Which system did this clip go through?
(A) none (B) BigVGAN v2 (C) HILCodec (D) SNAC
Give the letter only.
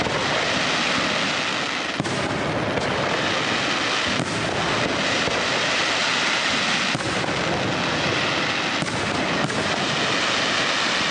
A